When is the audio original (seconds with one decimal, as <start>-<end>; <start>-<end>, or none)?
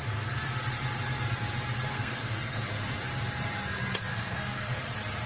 0.0-1.9; 2.6-4.1; 4.8-5.3